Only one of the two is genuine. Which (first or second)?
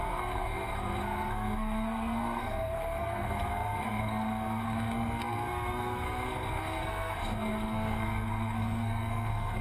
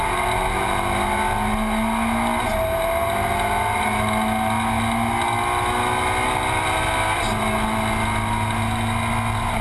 second